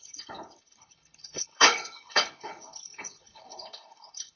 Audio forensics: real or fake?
fake